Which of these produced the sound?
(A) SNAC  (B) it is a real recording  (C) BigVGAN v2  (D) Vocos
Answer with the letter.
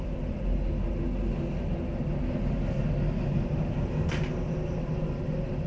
B